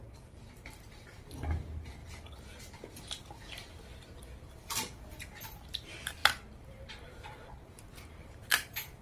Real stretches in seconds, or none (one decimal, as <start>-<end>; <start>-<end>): none